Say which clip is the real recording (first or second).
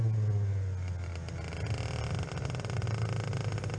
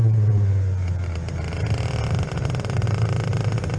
first